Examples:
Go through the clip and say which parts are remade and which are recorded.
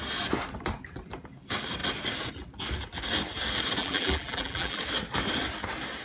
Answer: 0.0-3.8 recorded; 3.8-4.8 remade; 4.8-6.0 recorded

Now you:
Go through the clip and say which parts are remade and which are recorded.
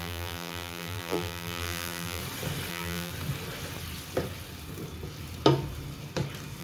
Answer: 0.0-2.2 remade; 2.2-2.7 recorded; 2.7-3.1 remade; 3.1-6.6 recorded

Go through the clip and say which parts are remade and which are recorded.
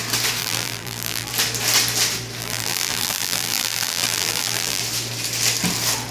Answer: 0.0-0.4 recorded; 0.4-1.3 remade; 1.3-2.4 recorded; 2.4-4.8 remade; 4.8-6.1 recorded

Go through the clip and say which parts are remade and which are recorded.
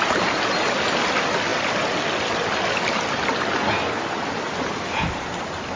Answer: 0.0-5.8 recorded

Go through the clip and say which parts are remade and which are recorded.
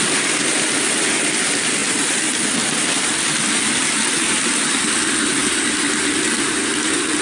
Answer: 0.0-1.8 recorded; 1.8-4.5 remade; 4.5-7.2 recorded